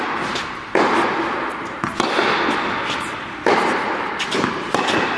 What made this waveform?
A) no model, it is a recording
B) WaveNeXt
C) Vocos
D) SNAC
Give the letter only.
A